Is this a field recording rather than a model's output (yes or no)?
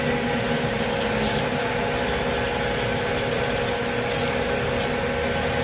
yes